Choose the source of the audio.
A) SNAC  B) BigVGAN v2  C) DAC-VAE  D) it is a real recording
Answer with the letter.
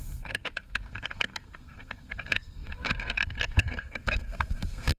A